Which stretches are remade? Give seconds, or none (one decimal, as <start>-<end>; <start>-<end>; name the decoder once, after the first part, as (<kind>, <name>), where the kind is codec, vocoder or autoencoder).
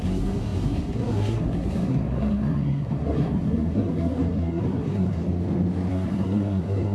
0.0-5.2 (codec, SNAC); 5.9-6.9